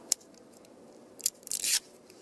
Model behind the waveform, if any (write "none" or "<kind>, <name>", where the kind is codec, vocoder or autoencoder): vocoder, BigVGAN v2